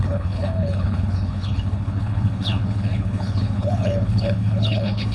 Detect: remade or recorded remade